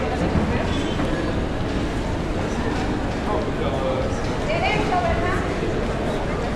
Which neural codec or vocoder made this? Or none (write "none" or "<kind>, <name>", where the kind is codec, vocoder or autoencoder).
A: none